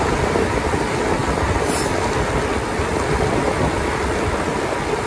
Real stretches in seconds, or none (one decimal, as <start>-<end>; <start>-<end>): 0.0-5.1